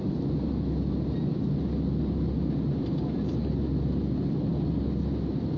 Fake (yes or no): no